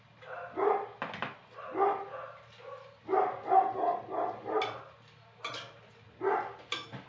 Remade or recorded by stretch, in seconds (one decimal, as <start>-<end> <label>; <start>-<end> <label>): 0.0-7.1 recorded